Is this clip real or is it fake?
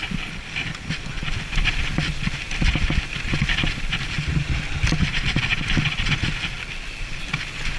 real